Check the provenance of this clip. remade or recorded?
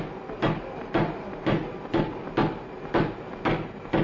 recorded